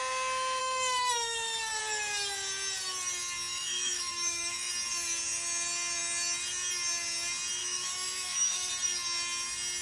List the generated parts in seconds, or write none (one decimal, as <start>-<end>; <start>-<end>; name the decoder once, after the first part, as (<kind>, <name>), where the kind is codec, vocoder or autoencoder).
0.6-1.8 (autoencoder, DAC-VAE); 3.5-4.7; 7.6-8.7

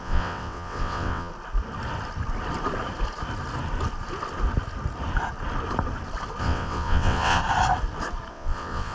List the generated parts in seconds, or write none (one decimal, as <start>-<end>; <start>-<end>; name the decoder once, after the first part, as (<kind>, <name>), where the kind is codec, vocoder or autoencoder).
0.0-1.3 (vocoder, WaveNeXt); 6.4-7.4; 8.3-8.9

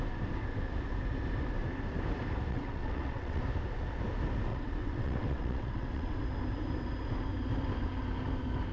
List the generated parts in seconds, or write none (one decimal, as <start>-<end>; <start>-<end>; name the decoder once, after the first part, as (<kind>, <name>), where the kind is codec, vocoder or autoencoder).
2.5-3.4 (vocoder, WaveNeXt); 4.5-6.2

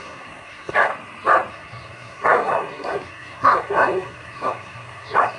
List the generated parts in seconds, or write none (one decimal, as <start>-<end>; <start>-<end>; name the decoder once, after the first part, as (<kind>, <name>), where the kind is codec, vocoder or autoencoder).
0.0-0.9 (codec, SNAC); 1.5-5.4

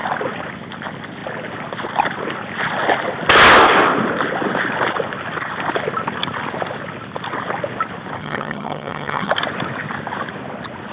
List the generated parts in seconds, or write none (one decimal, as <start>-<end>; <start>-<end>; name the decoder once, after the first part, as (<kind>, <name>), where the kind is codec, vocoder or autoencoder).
8.2-9.3 (vocoder, HiFi-GAN)

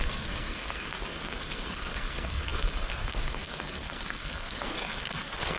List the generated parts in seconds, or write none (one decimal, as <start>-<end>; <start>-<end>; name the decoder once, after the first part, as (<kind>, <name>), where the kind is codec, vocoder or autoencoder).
0.0-5.6 (codec, SNAC)